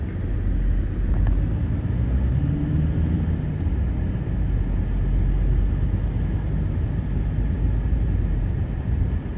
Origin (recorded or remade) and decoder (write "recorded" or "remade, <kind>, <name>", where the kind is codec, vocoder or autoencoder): recorded